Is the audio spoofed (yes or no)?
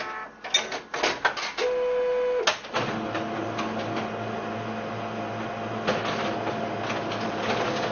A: no